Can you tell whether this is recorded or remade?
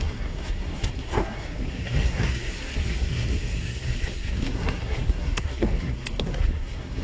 remade